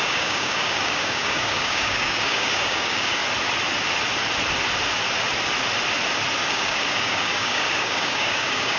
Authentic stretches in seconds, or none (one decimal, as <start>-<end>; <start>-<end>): 3.2-6.5